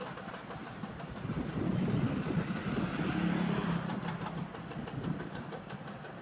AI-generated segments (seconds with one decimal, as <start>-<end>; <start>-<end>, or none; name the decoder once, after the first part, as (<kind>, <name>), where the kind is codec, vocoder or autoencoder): 0.0-2.6 (vocoder, BigVGAN v2); 5.2-6.2